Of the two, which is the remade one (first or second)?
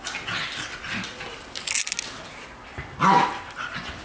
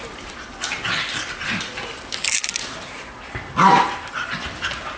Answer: second